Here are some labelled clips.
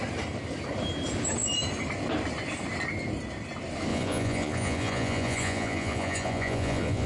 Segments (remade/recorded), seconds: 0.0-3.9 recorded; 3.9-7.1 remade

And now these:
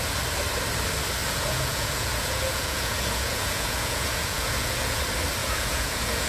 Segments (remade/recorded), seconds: 0.0-1.2 recorded; 1.2-5.0 remade; 5.0-5.4 recorded; 5.4-6.3 remade

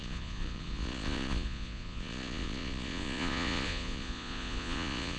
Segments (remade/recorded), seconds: 0.0-5.2 remade

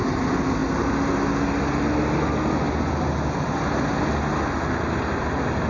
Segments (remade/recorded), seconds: 0.0-5.7 recorded